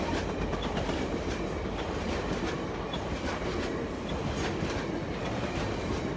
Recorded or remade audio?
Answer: recorded